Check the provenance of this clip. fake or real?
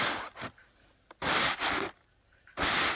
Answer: real